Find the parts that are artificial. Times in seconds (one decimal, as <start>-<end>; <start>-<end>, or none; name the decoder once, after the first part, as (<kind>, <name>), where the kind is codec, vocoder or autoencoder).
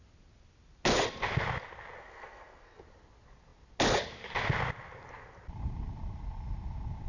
2.0-2.8 (codec, SNAC)